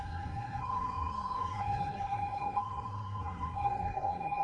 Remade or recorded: remade